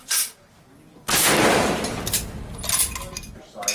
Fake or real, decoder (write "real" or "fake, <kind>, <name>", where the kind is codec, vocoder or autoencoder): real